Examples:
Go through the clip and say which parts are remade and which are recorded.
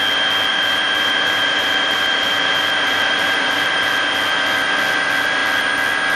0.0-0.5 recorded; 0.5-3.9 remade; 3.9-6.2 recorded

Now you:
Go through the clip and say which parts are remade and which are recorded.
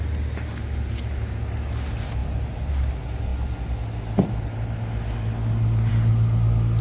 0.0-6.8 recorded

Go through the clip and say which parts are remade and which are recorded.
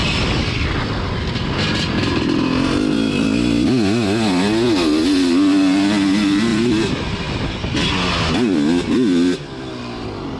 0.0-10.4 recorded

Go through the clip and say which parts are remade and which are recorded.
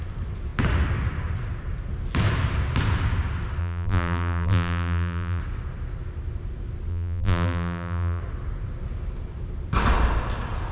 0.0-3.6 recorded; 3.6-5.4 remade; 5.4-6.9 recorded; 6.9-8.2 remade; 8.2-10.7 recorded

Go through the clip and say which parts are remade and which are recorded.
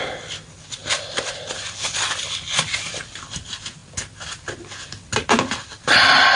0.0-6.4 recorded